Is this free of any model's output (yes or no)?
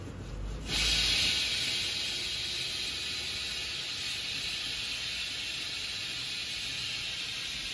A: yes